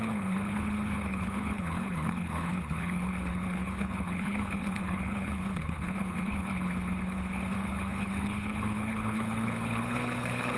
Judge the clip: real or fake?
fake